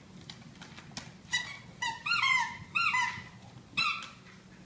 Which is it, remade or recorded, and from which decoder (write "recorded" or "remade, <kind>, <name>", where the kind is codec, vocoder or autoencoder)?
recorded